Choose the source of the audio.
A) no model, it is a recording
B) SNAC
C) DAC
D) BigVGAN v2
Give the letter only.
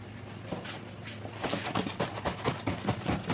A